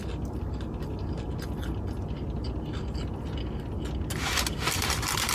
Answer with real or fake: real